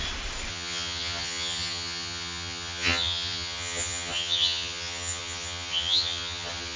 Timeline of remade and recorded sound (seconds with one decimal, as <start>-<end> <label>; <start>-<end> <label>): 0.0-0.5 recorded; 0.5-6.8 remade